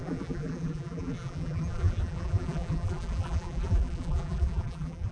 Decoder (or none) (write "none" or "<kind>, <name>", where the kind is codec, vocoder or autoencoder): vocoder, BigVGAN v2